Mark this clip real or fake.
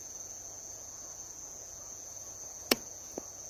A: fake